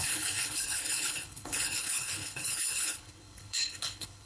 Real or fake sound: fake